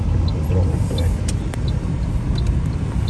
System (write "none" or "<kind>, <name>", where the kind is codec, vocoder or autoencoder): none